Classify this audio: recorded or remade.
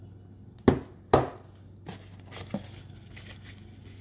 recorded